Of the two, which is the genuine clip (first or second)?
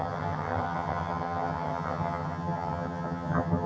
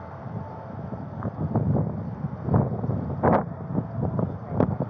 second